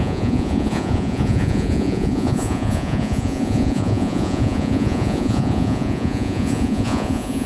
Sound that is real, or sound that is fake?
fake